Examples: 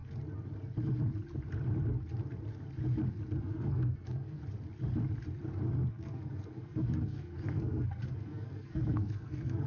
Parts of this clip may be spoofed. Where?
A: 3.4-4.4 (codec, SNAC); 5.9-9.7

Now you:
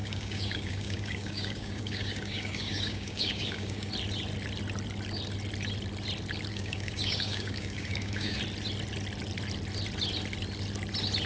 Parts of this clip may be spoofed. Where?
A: 0.0-3.9 (codec, DAC); 6.5-8.4